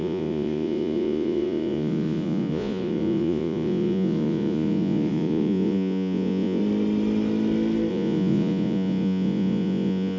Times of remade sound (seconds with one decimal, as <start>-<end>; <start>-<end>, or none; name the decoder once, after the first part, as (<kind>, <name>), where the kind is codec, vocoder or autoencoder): 0.0-6.6 (vocoder, Vocos); 7.9-10.2